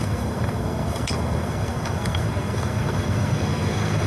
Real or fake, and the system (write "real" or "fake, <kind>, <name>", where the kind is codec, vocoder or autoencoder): fake, codec, SNAC